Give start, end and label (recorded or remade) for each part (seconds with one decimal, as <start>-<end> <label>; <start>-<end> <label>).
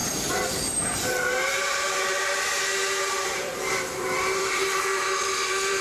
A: 0.0-2.4 remade; 2.4-3.2 recorded; 3.2-5.8 remade